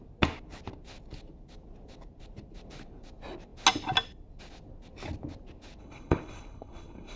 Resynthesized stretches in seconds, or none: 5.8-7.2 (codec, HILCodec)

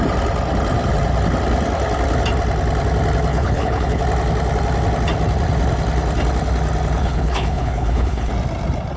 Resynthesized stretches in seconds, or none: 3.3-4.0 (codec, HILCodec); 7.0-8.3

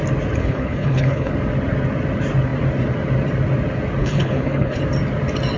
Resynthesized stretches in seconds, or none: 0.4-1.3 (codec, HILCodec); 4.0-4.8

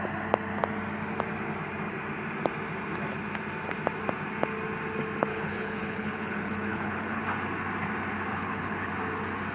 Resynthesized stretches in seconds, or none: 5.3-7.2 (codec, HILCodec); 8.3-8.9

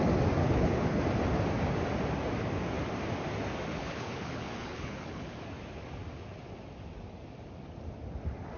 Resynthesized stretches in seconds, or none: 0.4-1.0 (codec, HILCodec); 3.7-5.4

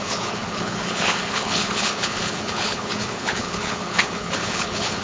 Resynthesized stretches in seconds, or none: 0.0-5.0 (codec, HILCodec)

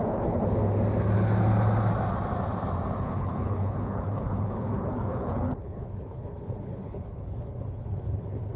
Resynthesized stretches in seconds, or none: 0.0-0.6 (codec, HILCodec); 3.0-8.6